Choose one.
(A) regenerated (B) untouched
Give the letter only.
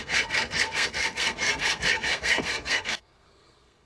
A